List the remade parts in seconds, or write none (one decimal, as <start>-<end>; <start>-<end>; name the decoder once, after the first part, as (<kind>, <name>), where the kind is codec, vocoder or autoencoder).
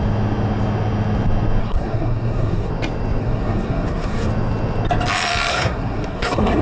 1.6-2.7 (codec, SNAC); 3.2-4.3; 5.5-6.6